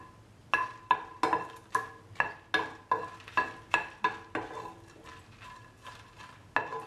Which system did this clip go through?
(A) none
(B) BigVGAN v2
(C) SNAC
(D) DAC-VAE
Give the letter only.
A